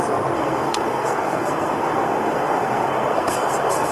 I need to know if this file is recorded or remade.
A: remade